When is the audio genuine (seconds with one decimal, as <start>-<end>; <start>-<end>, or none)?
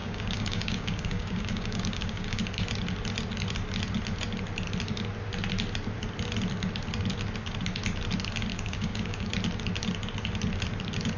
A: 2.4-8.5; 9.3-11.2